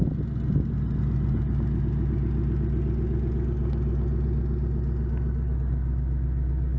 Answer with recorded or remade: recorded